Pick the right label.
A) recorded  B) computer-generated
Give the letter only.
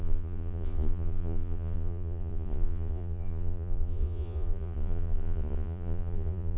B